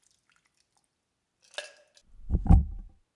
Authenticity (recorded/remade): recorded